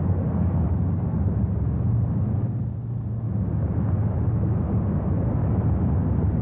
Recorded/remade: recorded